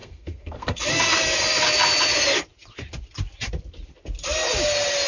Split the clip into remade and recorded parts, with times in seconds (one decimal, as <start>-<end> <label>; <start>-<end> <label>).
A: 0.0-0.8 remade; 0.8-5.1 recorded